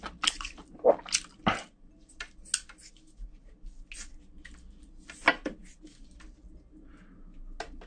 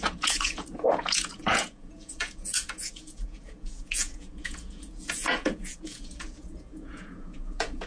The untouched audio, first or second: first